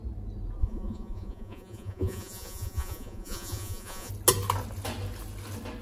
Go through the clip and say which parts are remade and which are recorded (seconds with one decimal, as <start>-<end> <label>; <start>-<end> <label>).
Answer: 0.0-0.6 recorded; 0.6-4.1 remade; 4.1-5.8 recorded